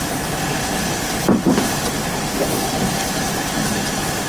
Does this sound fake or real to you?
real